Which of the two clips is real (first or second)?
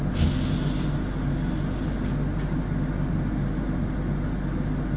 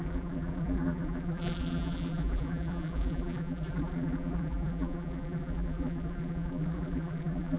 first